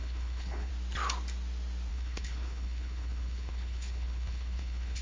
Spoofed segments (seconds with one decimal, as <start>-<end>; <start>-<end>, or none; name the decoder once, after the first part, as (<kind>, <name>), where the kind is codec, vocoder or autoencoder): 0.0-0.7 (codec, HILCodec); 1.9-5.0